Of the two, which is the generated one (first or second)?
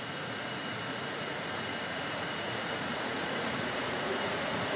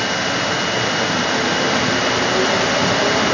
first